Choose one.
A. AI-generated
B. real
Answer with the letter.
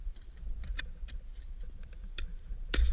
A